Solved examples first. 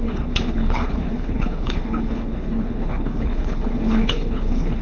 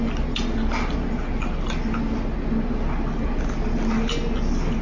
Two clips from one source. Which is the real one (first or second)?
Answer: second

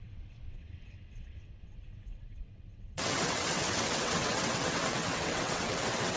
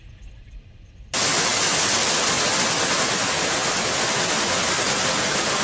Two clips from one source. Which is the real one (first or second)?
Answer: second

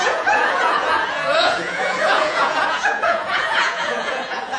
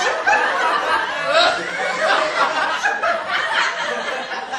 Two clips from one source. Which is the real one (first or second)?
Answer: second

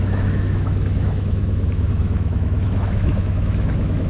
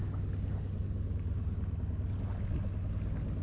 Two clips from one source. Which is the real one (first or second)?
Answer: second